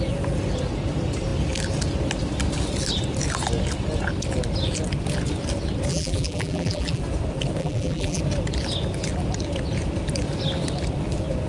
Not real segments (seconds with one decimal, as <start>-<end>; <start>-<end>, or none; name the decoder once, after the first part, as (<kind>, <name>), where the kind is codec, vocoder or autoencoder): 5.9-7.0 (vocoder, BigVGAN v2); 7.6-8.2